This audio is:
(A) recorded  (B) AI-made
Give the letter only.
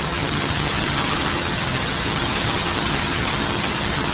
B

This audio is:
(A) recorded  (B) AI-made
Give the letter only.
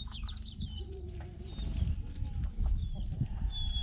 B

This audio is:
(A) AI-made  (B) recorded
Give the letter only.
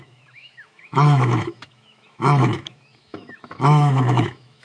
A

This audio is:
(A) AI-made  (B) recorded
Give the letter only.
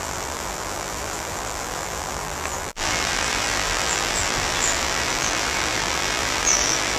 A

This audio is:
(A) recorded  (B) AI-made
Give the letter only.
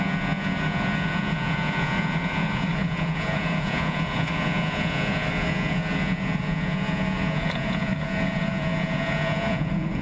B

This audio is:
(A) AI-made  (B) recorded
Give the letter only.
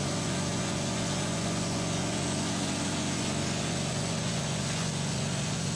A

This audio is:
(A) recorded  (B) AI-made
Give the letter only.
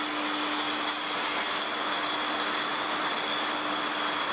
A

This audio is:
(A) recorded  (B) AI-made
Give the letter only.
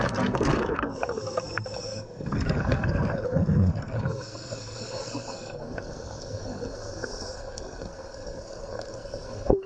B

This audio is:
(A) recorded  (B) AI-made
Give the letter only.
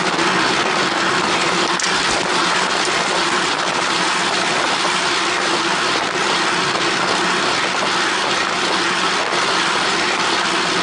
A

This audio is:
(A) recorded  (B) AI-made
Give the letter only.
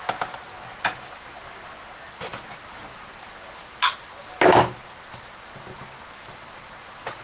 A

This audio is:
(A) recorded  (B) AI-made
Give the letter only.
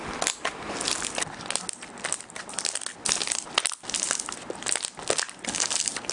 A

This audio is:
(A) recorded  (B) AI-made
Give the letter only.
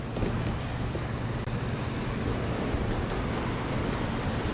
A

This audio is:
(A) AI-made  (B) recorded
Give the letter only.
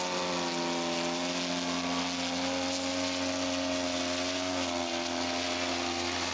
B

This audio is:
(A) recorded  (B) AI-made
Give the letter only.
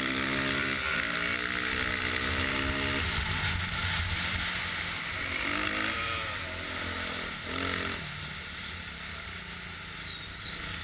A